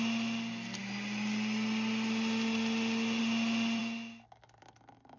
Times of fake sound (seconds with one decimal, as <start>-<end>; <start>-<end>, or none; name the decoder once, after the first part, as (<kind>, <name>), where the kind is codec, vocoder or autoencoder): none